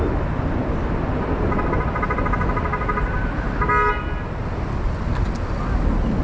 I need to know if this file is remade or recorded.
recorded